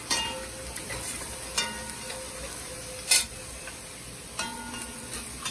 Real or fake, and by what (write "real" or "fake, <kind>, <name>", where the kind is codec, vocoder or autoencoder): real